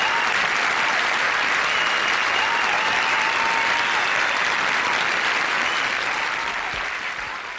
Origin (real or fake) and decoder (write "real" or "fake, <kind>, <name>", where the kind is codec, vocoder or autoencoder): real